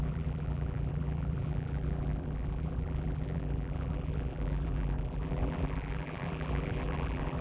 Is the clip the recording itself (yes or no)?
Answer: no